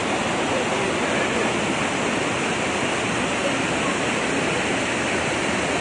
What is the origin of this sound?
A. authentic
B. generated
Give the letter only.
A